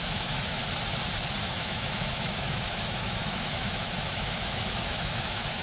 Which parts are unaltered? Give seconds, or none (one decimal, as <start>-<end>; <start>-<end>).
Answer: 0.6-1.4